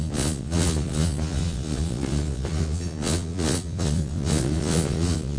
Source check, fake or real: fake